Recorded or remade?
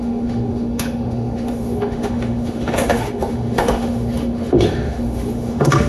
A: remade